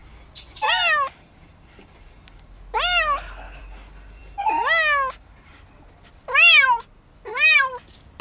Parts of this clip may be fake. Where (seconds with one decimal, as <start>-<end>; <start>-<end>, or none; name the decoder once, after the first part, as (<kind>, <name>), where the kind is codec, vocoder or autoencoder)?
none